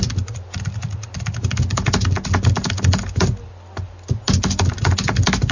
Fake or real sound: real